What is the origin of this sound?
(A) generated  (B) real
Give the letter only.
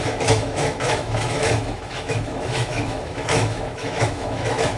A